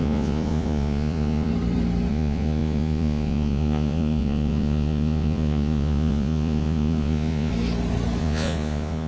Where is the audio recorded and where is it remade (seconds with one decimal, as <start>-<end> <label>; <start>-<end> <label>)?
0.0-1.5 remade; 1.5-2.1 recorded; 2.1-7.5 remade; 7.5-8.2 recorded; 8.2-9.1 remade